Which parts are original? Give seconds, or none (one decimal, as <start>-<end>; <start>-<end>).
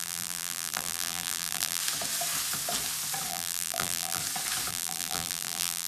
1.8-3.3; 4.2-4.7